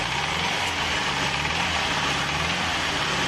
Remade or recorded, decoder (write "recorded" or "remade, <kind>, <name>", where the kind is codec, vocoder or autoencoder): recorded